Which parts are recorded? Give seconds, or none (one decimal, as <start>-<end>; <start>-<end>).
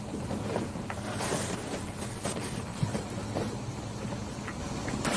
0.0-5.2